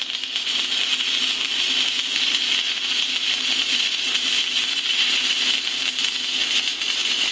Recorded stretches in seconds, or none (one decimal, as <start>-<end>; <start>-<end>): 0.0-3.6; 4.6-7.3